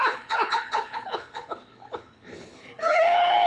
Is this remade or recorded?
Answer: remade